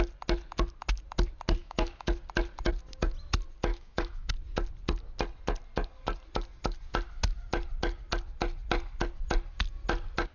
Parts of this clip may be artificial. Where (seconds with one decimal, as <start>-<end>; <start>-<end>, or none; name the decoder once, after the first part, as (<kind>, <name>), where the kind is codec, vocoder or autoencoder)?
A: 1.6-2.1 (autoencoder, DAC-VAE); 3.7-4.3